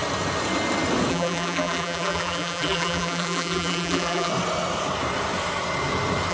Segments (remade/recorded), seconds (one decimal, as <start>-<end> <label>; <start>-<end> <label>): 0.0-1.1 recorded; 1.1-4.3 remade; 4.3-6.3 recorded